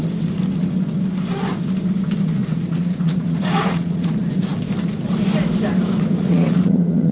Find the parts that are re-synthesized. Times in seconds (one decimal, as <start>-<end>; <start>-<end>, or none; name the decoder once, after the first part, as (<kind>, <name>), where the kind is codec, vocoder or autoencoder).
2.4-4.1 (vocoder, Vocos); 6.2-7.1